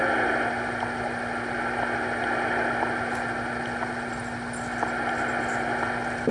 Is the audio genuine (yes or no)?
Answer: yes